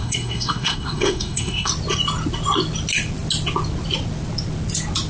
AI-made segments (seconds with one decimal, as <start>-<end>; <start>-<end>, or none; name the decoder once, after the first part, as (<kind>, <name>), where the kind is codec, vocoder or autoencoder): 0.0-1.7 (codec, SNAC)

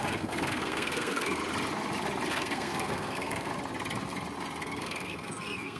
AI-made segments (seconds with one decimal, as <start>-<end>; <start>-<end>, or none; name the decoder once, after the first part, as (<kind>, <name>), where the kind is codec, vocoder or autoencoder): 0.0-1.4 (codec, SNAC); 2.3-3.5; 4.6-5.8